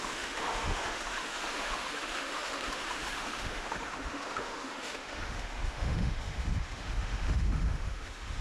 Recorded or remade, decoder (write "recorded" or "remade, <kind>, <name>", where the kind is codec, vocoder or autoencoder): remade, autoencoder, DAC-VAE